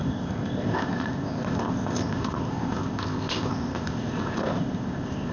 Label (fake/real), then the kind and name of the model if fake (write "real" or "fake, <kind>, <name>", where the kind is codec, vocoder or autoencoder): fake, codec, ZipCodec